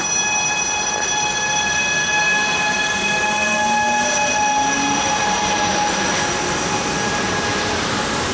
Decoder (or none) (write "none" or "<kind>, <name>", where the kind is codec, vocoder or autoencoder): none